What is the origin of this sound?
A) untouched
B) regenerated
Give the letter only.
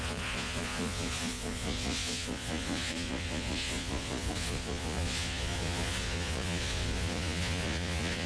B